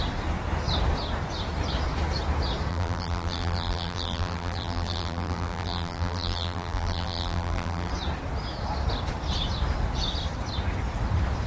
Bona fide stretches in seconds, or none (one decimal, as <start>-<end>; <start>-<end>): 0.0-2.7; 7.9-11.5